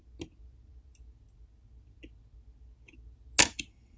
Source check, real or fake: real